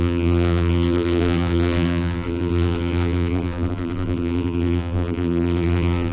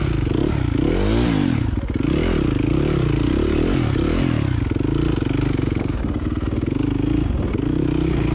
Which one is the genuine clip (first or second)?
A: second